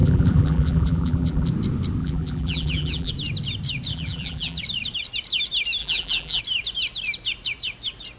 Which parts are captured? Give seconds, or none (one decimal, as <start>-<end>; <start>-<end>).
1.5-2.0; 3.1-3.9; 4.6-5.8; 6.4-8.2